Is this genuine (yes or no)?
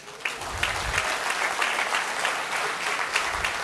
yes